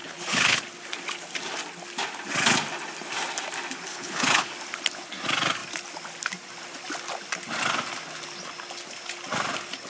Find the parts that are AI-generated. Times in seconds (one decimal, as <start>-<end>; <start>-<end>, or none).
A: 0.0-0.6; 3.9-4.5